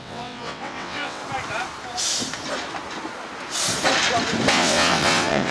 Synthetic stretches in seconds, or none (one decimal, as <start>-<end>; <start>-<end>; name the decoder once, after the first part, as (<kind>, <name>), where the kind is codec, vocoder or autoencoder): 0.0-1.2 (vocoder, WaveNeXt); 4.5-5.5